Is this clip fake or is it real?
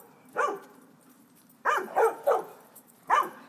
fake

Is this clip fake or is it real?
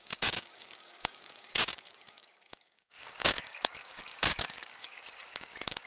fake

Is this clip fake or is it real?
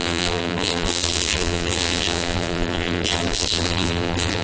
fake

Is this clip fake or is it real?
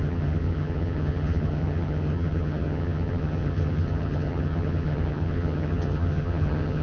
fake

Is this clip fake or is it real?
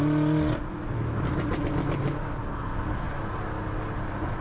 real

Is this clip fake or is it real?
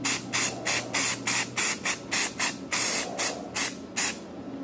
real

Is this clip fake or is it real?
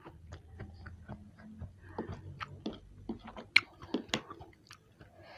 real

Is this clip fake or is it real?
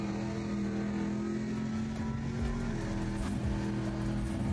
real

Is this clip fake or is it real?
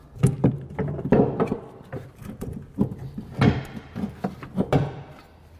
real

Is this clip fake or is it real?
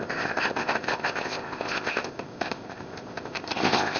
fake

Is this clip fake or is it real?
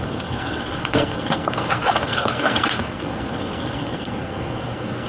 fake